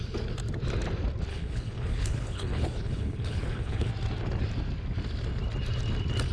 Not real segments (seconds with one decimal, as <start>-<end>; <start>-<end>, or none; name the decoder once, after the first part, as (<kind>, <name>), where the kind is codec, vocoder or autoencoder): 1.3-3.9 (codec, HILCodec)